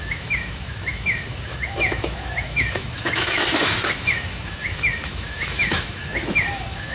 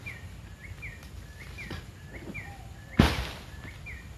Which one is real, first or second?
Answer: second